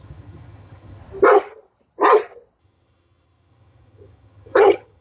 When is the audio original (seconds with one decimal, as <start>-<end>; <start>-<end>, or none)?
1.0-2.6